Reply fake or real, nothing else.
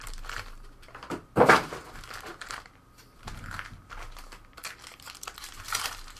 real